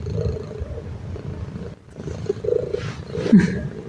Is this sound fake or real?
real